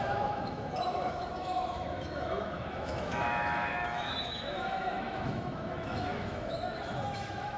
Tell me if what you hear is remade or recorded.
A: remade